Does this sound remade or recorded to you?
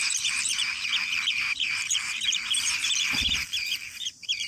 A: remade